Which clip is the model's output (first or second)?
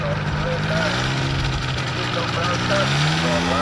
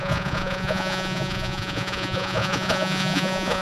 second